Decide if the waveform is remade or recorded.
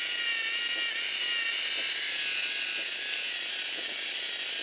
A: recorded